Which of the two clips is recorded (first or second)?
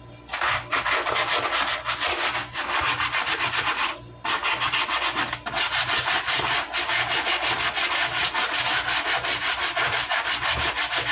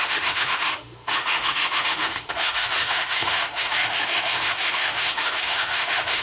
first